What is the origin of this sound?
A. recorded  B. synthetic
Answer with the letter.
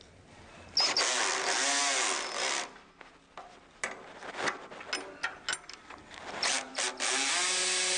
A